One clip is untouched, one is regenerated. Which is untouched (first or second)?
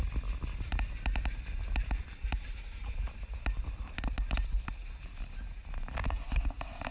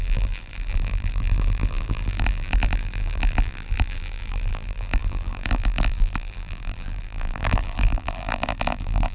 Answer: first